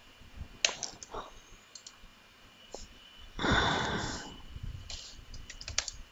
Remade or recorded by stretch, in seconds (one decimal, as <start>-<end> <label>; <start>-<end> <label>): 0.0-0.6 remade; 0.6-2.1 recorded; 2.1-6.1 remade